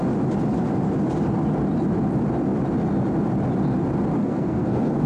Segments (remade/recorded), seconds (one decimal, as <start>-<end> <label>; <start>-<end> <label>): 0.0-4.2 recorded; 4.2-5.1 remade